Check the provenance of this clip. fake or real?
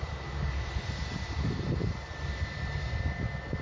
real